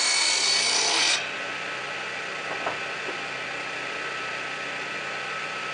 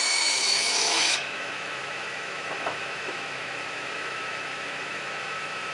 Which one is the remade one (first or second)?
second